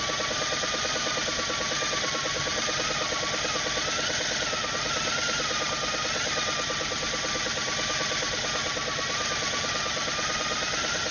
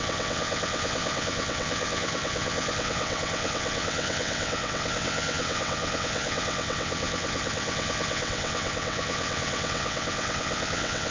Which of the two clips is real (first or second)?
first